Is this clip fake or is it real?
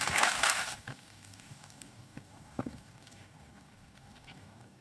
fake